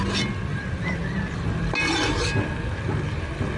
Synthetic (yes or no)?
no